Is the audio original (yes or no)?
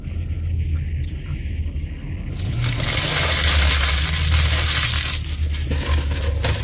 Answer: yes